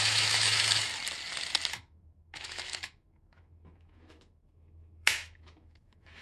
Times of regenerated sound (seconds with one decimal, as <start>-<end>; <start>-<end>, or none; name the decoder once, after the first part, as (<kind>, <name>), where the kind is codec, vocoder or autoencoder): 0.0-0.9 (autoencoder, DAC-VAE); 1.7-6.2